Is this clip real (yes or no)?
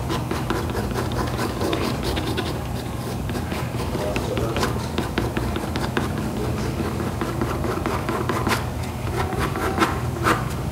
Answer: no